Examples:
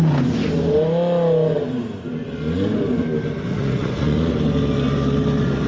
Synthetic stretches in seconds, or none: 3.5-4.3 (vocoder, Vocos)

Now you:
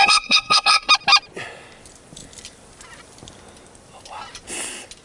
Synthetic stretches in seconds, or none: 0.0-0.9 (codec, SNAC)

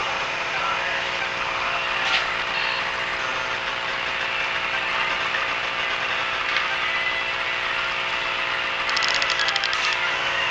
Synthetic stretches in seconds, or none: 0.0-0.6 (vocoder, Vocos)